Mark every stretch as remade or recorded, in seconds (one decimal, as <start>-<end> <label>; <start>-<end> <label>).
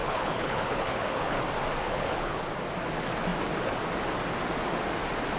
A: 0.0-1.4 remade; 1.4-1.8 recorded; 1.8-2.4 remade; 2.4-5.4 recorded